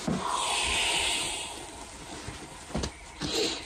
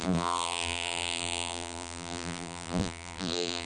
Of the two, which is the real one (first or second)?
first